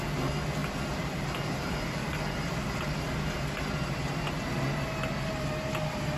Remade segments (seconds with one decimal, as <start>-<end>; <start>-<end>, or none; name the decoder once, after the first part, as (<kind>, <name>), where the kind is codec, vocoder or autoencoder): 0.6-2.8 (vocoder, BigVGAN v2)

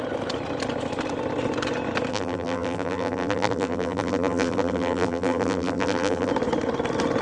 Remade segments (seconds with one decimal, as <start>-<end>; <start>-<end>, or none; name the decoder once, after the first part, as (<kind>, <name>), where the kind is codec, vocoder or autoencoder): 2.1-6.3 (vocoder, BigVGAN v2)

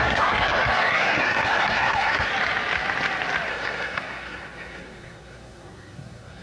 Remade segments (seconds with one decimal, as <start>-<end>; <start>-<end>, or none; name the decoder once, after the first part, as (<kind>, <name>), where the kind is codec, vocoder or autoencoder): 0.0-2.3 (codec, SNAC); 3.5-6.4

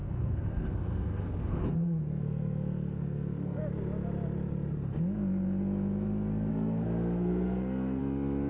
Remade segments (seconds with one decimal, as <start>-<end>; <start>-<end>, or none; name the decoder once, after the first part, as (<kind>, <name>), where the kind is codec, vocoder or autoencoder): 0.0-3.6 (codec, SNAC); 6.5-8.0

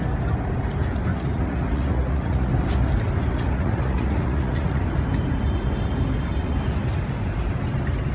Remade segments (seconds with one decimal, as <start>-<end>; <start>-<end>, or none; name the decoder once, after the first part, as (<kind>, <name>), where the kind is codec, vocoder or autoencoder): 1.1-2.5 (vocoder, Vocos); 3.3-4.8

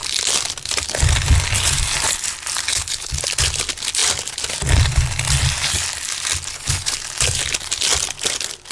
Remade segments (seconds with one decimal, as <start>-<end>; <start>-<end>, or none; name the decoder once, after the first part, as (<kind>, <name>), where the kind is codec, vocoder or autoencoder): 2.7-3.2 (codec, HILCodec); 6.5-7.0

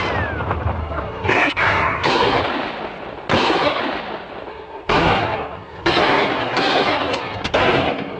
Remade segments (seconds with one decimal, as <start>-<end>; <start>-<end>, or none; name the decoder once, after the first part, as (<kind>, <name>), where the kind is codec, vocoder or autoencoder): 0.8-2.4 (codec, SNAC); 3.3-3.8; 4.5-8.2